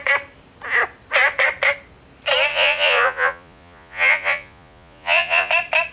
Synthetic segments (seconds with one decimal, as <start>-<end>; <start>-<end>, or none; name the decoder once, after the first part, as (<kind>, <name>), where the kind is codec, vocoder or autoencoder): 2.5-5.5 (vocoder, Vocos)